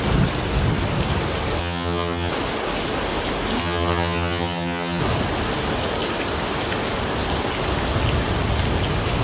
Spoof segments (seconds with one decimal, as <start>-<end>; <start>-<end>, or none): 1.6-2.3; 3.6-5.0